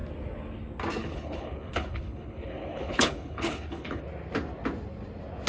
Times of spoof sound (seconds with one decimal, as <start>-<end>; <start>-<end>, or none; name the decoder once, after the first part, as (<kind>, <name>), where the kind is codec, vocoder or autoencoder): 1.0-4.0 (codec, HILCodec)